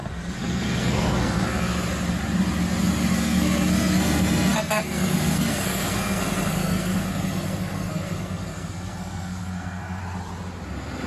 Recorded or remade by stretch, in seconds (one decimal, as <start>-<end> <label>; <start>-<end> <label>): 0.0-1.7 remade; 1.7-3.1 recorded; 3.1-10.0 remade; 10.0-11.1 recorded